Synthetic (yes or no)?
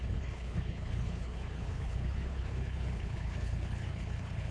yes